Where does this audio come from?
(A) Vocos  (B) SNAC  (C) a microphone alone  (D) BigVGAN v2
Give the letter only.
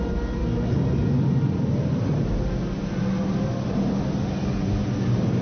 C